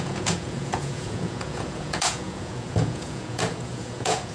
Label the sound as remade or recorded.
remade